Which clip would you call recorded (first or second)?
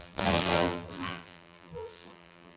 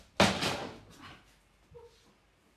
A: second